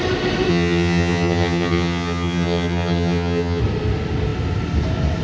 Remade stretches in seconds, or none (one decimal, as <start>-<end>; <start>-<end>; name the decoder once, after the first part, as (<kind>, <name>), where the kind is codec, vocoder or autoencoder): 0.5-3.6 (vocoder, HiFi-GAN)